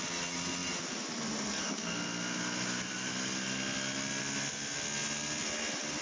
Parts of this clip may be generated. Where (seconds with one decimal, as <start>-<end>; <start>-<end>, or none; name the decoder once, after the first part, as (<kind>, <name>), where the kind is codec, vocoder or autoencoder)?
none